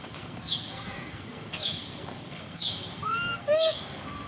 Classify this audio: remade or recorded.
remade